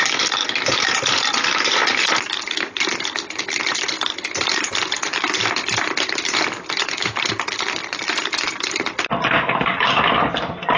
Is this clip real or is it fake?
real